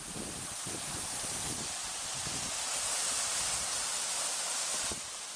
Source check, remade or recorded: recorded